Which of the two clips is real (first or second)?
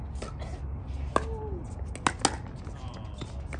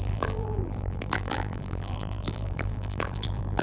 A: first